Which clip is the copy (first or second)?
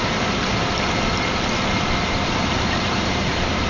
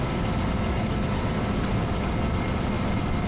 first